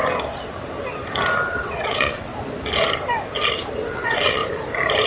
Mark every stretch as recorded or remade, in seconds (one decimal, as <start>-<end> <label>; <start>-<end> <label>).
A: 0.0-1.5 recorded; 1.5-2.3 remade; 2.3-3.9 recorded; 3.9-4.4 remade; 4.4-5.1 recorded